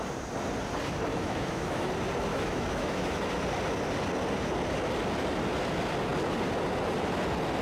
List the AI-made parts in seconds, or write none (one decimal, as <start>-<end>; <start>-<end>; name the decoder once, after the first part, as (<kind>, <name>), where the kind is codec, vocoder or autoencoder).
1.1-1.9 (autoencoder, DAC-VAE); 2.3-3.2